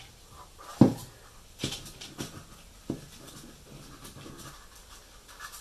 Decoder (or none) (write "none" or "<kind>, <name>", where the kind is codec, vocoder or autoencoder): none